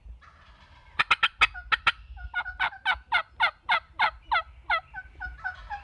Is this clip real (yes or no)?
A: yes